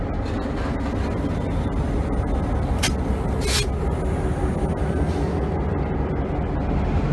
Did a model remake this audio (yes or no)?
no